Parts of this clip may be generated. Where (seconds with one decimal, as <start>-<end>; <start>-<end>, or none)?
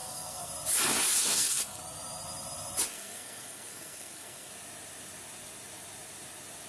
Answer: 0.0-0.5; 1.2-1.8; 2.9-4.5